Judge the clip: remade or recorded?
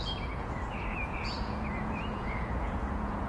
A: remade